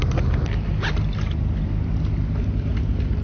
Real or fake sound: real